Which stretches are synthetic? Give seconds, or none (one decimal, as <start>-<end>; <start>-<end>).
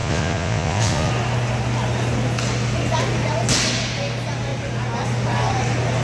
0.0-1.1